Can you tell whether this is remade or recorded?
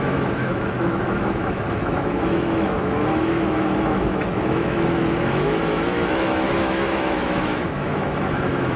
remade